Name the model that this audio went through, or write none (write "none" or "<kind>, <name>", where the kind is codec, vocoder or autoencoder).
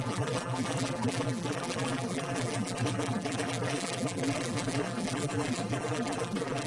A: vocoder, BigVGAN v2